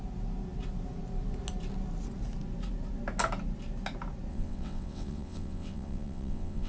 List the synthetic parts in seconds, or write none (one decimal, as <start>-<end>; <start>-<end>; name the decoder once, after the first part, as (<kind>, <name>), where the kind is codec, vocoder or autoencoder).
4.3-6.7 (vocoder, WaveNeXt)